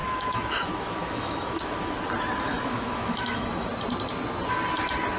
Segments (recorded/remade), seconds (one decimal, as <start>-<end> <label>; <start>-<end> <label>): 0.0-2.0 remade; 2.0-2.5 recorded; 2.5-3.7 remade; 3.7-5.2 recorded